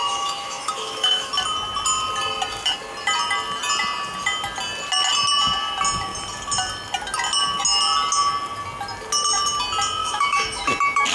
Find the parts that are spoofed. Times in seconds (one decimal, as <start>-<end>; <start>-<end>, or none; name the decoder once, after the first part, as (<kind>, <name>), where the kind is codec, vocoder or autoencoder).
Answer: 0.0-1.3 (autoencoder, DAC-VAE); 10.0-10.7